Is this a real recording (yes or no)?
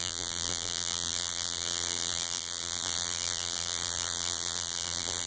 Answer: no